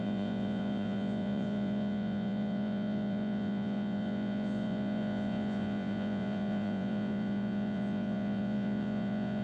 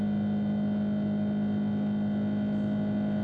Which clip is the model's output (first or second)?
first